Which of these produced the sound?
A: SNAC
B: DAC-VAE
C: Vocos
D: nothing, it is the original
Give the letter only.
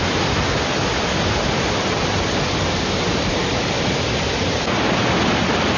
D